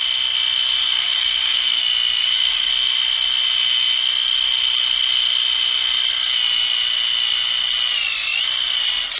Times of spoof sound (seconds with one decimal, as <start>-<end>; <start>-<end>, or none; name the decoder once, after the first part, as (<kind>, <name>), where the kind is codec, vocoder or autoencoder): 0.8-1.8 (codec, DAC); 2.2-2.7